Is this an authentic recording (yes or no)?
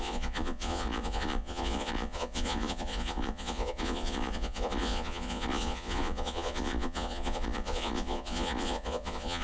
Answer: no